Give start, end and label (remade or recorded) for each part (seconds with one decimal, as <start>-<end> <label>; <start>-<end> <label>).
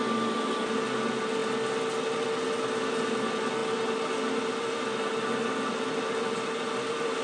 0.0-7.2 recorded